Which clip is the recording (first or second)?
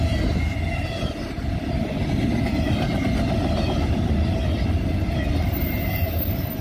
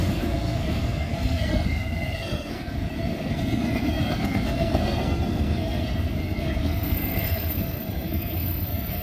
first